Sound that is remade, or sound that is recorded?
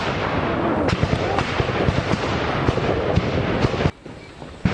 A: recorded